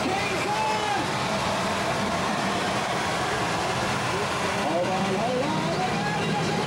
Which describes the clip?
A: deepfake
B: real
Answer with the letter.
A